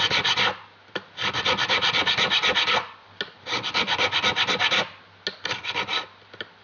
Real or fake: real